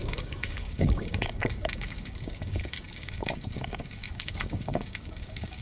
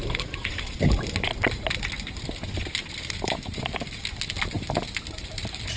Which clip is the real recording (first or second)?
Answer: second